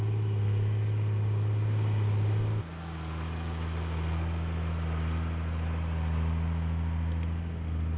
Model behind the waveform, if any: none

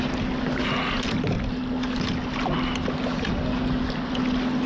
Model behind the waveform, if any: none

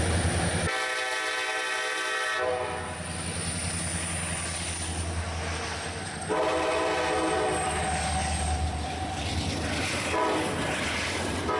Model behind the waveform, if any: none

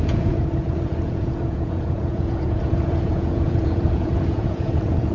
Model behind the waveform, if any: vocoder, Vocos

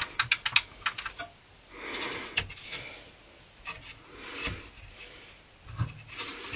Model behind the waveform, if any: none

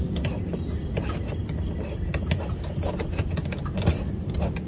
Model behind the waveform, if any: none